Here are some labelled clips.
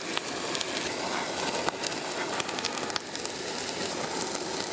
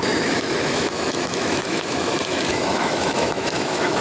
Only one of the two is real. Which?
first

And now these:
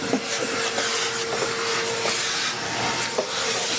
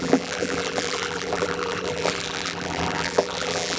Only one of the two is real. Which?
first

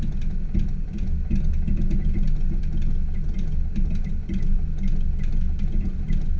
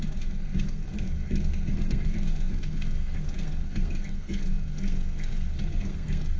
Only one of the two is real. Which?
first